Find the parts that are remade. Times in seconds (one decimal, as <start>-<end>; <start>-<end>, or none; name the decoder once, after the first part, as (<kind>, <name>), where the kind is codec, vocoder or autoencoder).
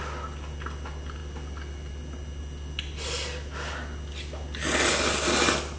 none